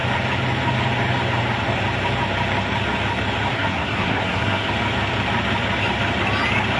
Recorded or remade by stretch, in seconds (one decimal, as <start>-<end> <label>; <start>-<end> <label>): 0.0-3.5 recorded; 3.5-4.7 remade; 4.7-6.8 recorded